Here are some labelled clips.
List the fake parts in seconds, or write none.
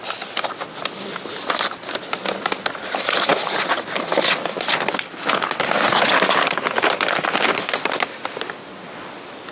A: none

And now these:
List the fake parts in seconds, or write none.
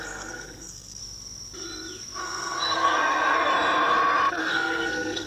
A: 0.0-1.0 (codec, SNAC); 2.2-3.5; 4.4-5.3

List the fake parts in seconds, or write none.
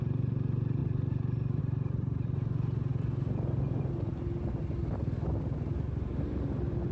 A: none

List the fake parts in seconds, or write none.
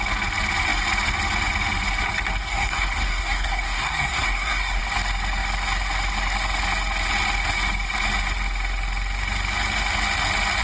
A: 2.4-4.8 (codec, SNAC)